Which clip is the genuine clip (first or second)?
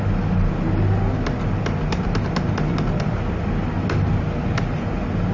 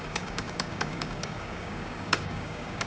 first